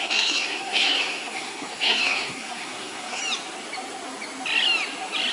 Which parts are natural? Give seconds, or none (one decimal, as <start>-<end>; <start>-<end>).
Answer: 3.2-5.3